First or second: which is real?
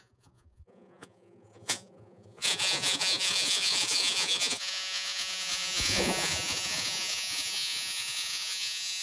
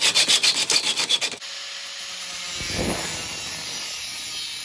second